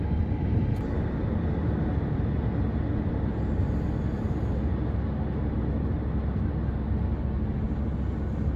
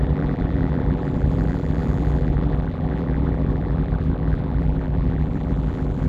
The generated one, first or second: second